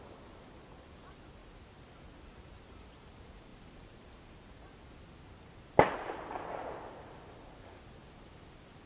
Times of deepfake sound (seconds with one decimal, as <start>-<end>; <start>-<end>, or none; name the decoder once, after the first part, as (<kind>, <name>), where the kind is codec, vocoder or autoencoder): none